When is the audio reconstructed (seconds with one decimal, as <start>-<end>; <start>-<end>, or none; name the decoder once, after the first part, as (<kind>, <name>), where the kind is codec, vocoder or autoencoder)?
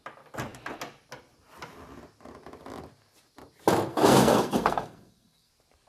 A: 3.9-5.5 (codec, SNAC)